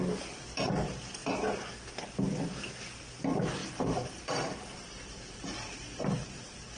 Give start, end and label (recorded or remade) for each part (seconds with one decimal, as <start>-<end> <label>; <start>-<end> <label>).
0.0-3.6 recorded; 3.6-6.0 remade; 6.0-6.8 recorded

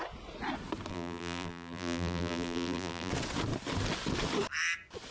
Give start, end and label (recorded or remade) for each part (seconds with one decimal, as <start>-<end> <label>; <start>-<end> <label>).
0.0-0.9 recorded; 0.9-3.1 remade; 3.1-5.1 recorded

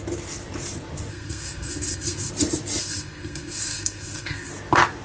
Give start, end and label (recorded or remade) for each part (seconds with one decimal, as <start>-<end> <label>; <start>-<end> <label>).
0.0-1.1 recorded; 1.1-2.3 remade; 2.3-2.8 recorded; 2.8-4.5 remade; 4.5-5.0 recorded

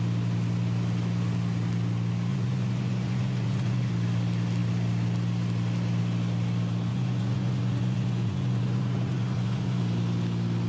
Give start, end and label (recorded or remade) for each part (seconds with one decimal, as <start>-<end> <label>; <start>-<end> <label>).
0.0-2.3 recorded; 2.3-3.9 remade; 3.9-6.9 recorded; 6.9-9.8 remade; 9.8-10.7 recorded